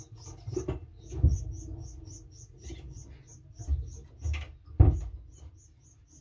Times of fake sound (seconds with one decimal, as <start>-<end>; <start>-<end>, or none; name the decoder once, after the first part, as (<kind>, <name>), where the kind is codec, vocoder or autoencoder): none